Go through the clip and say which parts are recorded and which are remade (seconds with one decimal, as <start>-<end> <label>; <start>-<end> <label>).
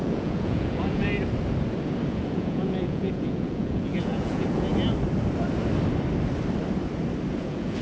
0.0-1.0 remade; 1.0-2.1 recorded; 2.1-4.7 remade; 4.7-7.3 recorded; 7.3-7.8 remade